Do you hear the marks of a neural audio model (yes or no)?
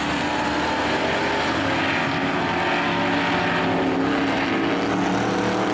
no